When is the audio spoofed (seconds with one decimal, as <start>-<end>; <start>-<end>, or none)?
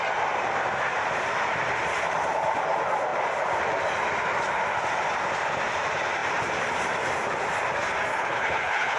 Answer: 8.1-9.0